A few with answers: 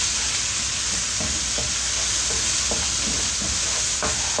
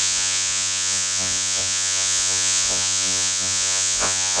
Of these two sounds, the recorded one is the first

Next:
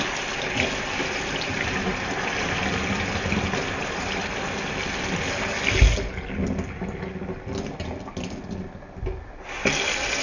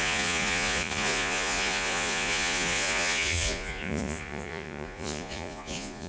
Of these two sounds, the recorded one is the first